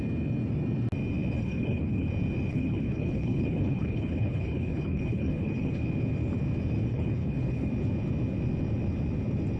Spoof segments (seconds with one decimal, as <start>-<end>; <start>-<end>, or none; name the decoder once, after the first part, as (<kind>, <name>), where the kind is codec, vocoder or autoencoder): 1.4-2.1 (codec, HILCodec); 2.5-5.8; 6.9-7.7